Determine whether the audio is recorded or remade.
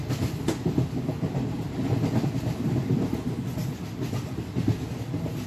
recorded